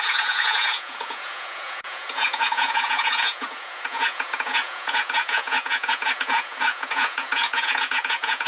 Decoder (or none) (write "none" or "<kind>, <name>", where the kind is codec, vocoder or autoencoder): vocoder, Vocos